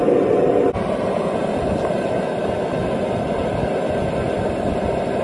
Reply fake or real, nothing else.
real